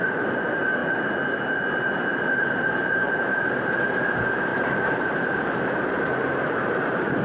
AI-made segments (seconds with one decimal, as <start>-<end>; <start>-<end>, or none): 2.1-3.5; 4.5-7.2